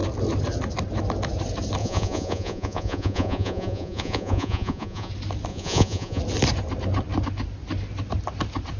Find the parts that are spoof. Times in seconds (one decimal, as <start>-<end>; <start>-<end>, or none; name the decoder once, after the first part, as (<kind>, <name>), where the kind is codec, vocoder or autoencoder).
1.8-5.1 (vocoder, Vocos); 5.5-6.2